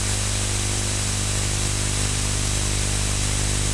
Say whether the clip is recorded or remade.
recorded